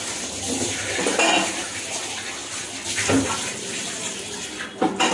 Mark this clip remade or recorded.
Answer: recorded